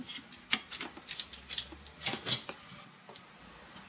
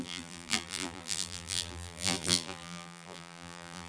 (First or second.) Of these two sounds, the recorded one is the first